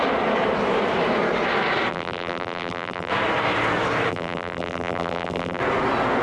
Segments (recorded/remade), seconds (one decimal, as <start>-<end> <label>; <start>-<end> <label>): 0.0-1.9 recorded; 1.9-3.1 remade; 3.1-4.1 recorded; 4.1-5.6 remade; 5.6-6.2 recorded